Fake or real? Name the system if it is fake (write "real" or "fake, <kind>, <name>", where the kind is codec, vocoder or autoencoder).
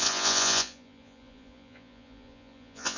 fake, vocoder, Vocos